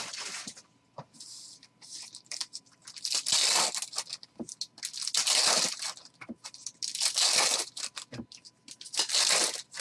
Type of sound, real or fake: real